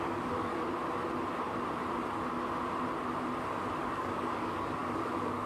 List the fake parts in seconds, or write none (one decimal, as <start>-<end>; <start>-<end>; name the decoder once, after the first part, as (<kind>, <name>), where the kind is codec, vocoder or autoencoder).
0.0-0.5 (codec, DAC); 3.8-5.5